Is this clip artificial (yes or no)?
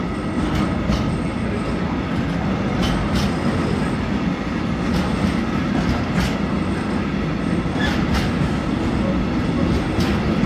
no